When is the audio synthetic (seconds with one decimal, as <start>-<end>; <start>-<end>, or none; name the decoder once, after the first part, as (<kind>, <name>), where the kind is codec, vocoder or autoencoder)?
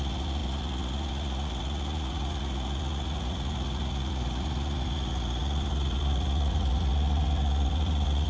0.0-8.3 (vocoder, Vocos)